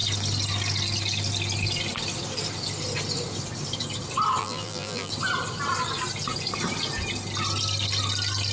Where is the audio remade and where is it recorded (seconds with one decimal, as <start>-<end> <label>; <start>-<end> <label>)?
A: 0.0-4.4 recorded; 4.4-5.1 remade; 5.1-8.5 recorded